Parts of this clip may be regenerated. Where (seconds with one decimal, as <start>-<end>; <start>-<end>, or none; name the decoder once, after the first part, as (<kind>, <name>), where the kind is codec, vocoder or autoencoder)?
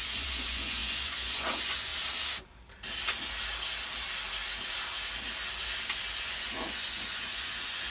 0.0-1.9 (vocoder, Vocos); 6.2-7.9